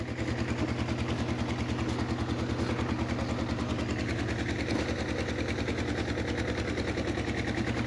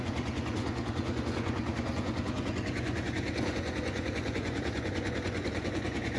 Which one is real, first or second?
first